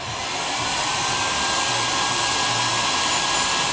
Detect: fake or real real